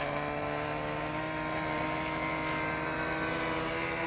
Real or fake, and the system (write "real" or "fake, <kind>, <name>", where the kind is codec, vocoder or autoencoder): real